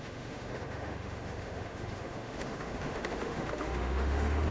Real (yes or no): no